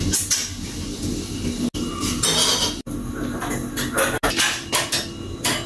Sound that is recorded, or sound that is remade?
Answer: recorded